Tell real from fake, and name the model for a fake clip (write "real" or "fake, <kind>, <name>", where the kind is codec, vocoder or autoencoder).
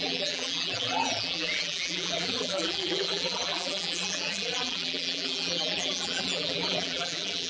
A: fake, vocoder, BigVGAN v2